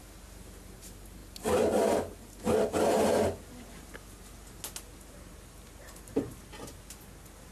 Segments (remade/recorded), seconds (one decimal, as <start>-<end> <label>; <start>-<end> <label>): 0.0-7.5 recorded